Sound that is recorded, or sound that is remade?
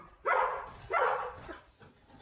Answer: remade